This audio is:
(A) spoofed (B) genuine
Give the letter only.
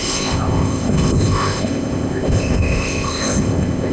A